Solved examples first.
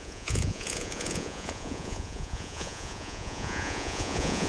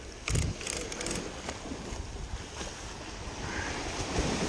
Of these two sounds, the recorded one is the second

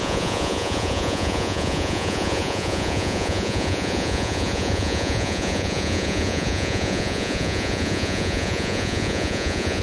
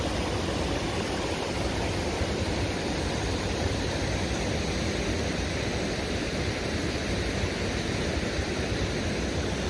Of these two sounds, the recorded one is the second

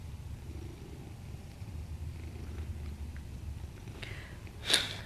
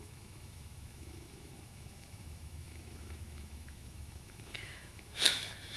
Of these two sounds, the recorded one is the first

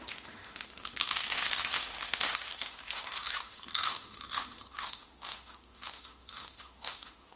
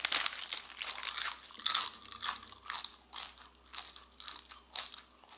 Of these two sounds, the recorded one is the second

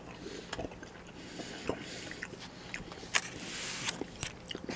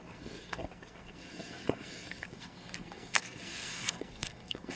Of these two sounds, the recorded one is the first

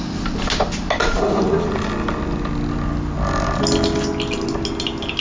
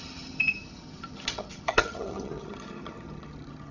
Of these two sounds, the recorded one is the first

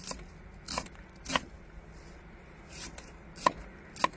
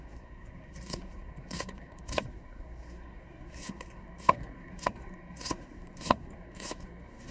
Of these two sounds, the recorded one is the first